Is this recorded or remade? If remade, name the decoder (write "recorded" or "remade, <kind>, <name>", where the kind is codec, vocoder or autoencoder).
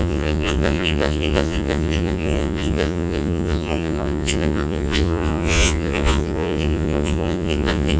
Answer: remade, vocoder, Vocos